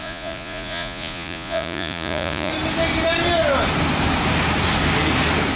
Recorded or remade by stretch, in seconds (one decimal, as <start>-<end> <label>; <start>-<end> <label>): 0.0-2.5 remade; 2.5-5.6 recorded